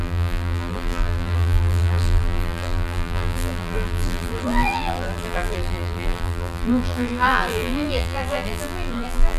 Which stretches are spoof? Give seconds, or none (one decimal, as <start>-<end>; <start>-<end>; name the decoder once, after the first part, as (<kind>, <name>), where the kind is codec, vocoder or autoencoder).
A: 0.0-9.4 (vocoder, BigVGAN v2)

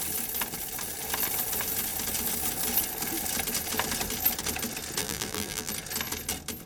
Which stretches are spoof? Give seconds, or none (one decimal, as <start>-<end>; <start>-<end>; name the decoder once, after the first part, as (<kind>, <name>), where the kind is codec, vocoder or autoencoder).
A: 5.0-5.7 (vocoder, BigVGAN v2)

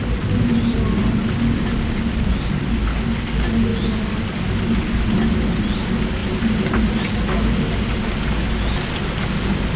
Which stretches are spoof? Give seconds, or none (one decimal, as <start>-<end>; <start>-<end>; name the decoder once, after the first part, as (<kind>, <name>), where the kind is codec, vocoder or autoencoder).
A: 6.2-6.8 (vocoder, BigVGAN v2)

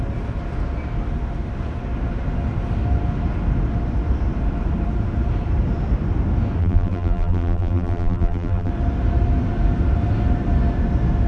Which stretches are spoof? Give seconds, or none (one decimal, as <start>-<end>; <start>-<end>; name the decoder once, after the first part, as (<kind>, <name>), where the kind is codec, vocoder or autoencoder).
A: 6.6-8.7 (vocoder, BigVGAN v2)

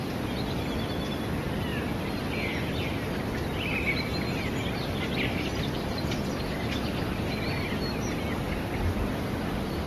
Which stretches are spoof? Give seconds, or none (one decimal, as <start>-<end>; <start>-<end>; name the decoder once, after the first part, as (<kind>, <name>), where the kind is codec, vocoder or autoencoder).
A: 1.7-6.4 (vocoder, BigVGAN v2)

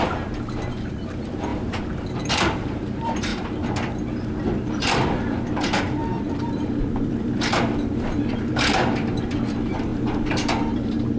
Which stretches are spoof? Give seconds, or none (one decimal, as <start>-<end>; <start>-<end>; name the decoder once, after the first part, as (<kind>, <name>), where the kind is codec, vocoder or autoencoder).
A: 0.0-3.3 (vocoder, BigVGAN v2); 4.9-9.9; 10.7-11.2

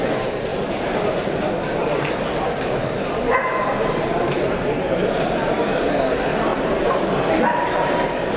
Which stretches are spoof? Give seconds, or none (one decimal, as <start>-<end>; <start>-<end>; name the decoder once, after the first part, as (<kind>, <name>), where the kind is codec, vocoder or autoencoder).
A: 0.5-1.5 (vocoder, BigVGAN v2); 2.8-6.0; 6.5-8.4